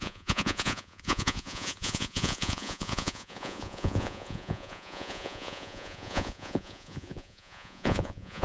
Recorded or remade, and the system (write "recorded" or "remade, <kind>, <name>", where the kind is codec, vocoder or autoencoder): remade, vocoder, Vocos